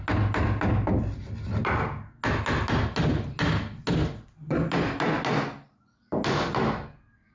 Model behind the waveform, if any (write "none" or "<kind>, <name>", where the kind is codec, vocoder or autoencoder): none